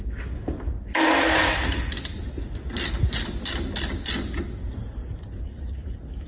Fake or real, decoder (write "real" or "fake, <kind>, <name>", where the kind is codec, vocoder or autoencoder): real